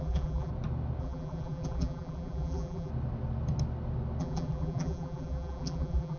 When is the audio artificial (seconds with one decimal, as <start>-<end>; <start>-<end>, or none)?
0.0-0.5; 1.0-2.9; 4.2-6.2